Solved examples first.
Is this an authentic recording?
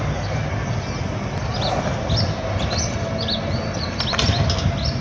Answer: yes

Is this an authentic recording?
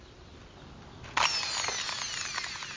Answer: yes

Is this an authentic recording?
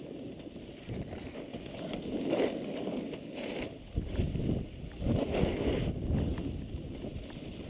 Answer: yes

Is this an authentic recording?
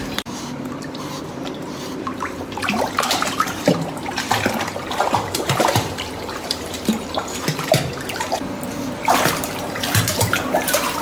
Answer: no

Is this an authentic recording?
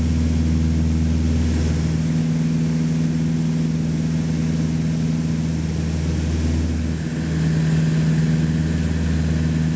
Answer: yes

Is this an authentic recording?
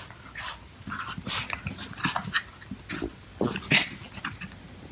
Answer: yes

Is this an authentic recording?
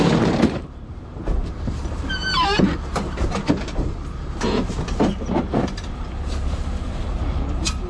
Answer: no